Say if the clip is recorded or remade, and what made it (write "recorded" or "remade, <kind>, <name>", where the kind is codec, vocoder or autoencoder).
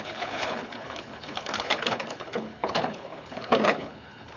remade, codec, HILCodec